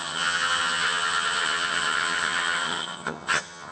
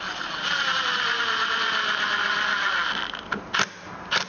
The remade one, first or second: first